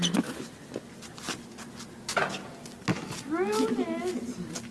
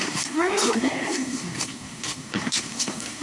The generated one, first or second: second